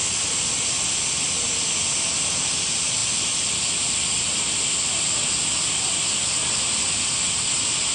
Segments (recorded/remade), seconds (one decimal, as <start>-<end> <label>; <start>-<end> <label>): 0.0-7.9 recorded